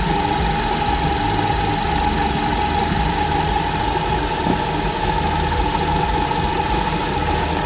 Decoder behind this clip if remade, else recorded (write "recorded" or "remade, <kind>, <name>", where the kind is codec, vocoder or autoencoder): recorded